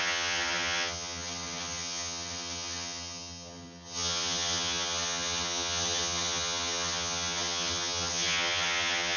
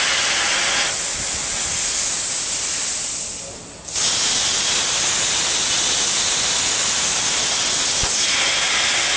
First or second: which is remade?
first